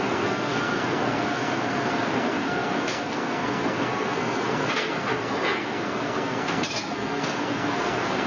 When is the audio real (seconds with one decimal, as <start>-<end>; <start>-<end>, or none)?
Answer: none